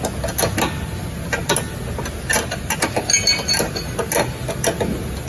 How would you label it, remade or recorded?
recorded